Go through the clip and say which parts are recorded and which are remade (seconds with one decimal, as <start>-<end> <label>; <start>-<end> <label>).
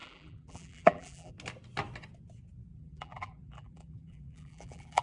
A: 0.0-1.3 remade; 1.3-2.7 recorded; 2.7-5.0 remade